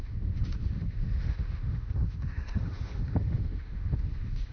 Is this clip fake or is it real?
fake